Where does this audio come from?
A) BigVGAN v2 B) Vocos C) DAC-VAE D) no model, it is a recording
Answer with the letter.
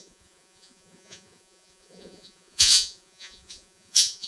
B